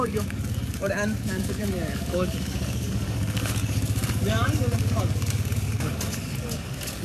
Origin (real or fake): fake